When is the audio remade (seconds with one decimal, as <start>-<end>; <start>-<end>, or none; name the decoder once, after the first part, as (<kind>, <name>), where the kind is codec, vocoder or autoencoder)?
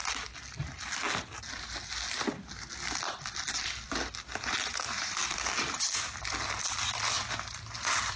4.7-5.2 (vocoder, BigVGAN v2)